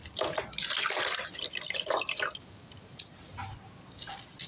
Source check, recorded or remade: recorded